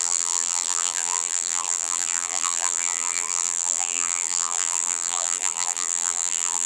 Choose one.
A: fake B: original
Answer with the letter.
A